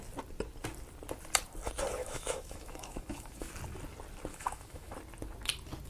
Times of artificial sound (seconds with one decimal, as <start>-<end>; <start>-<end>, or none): 2.0-3.5; 4.3-4.9